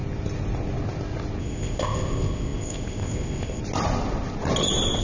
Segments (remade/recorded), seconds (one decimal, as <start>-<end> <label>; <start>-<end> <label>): 0.0-1.4 recorded; 1.4-3.6 remade; 3.6-5.0 recorded